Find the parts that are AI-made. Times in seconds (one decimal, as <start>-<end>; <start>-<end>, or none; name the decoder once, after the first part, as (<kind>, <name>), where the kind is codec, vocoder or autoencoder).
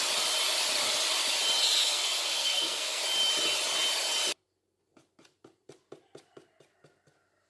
1.8-3.0 (codec, SNAC)